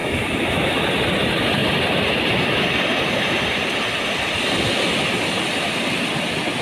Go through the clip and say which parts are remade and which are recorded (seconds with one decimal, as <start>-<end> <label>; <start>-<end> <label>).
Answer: 0.0-0.8 remade; 0.8-6.6 recorded